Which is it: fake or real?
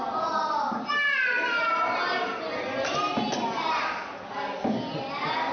real